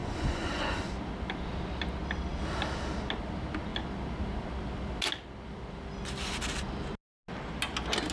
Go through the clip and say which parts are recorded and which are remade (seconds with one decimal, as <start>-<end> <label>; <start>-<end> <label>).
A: 0.0-0.8 remade; 0.8-8.1 recorded